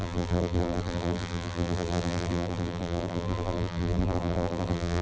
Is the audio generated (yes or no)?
yes